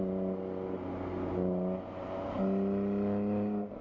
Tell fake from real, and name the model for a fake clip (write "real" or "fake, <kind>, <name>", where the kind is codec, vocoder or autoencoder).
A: real